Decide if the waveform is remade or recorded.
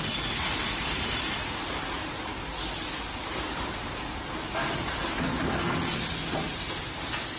recorded